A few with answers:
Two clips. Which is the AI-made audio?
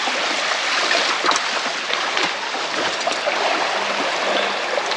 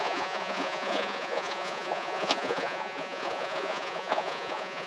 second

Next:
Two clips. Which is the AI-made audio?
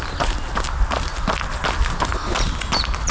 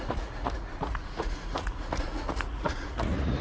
second